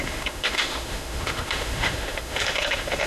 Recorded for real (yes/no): no